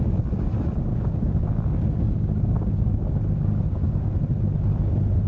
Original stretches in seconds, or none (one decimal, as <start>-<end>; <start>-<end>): 0.0-0.9; 4.1-5.3